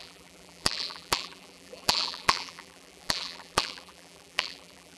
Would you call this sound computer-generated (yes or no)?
yes